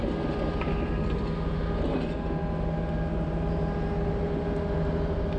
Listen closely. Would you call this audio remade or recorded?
recorded